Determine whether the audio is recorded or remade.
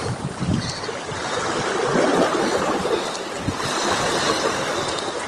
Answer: recorded